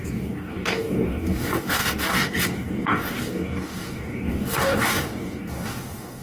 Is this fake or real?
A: fake